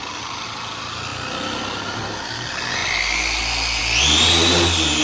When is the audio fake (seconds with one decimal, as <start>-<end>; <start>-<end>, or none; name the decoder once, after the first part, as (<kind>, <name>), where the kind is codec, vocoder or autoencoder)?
none